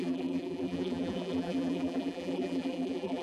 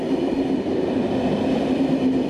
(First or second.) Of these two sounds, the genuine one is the second